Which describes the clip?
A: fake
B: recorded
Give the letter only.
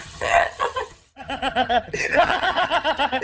A